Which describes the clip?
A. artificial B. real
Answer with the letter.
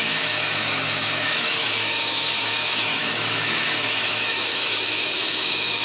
A